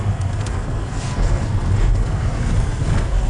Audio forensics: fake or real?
fake